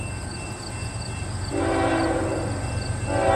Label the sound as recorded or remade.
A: recorded